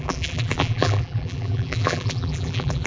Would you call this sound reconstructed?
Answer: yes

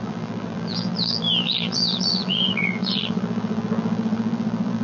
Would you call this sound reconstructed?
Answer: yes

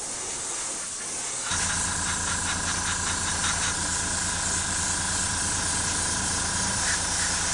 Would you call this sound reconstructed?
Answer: no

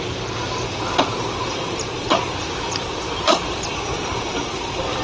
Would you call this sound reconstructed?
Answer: yes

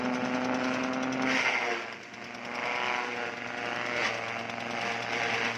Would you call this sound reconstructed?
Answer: no